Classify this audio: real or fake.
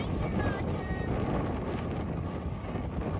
real